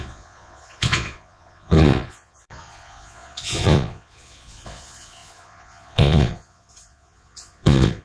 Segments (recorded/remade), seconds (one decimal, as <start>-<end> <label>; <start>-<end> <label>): 0.0-8.0 remade